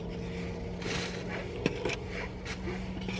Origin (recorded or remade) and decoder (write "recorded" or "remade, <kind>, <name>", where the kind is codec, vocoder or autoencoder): recorded